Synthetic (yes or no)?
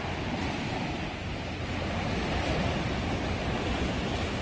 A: no